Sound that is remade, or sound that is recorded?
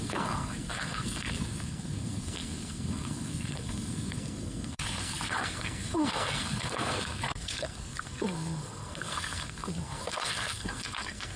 remade